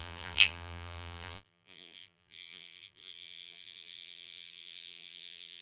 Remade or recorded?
remade